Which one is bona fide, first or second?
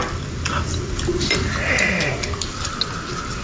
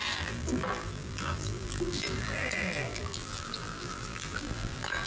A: first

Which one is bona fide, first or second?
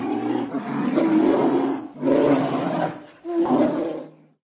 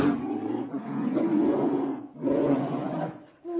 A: first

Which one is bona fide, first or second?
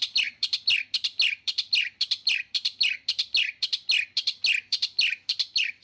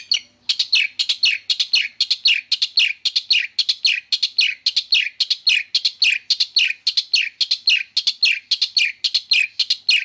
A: second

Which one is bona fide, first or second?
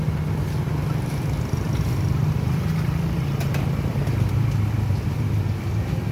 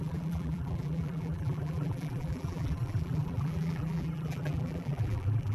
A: first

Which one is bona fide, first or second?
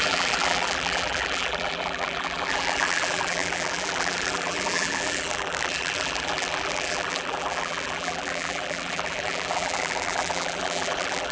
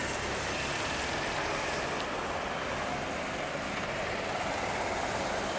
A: second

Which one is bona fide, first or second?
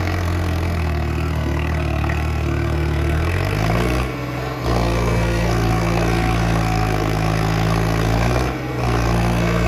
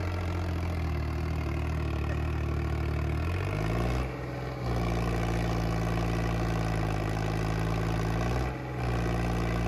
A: second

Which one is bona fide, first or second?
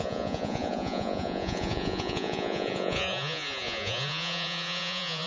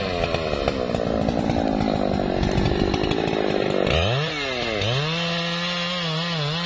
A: second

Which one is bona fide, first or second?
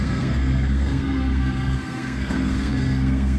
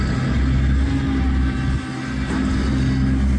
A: second